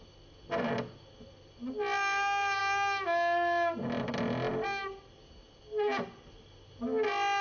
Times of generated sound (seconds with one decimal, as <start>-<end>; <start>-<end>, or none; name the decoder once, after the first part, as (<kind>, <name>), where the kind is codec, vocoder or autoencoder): none